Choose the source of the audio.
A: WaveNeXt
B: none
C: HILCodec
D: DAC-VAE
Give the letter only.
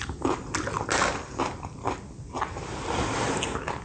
B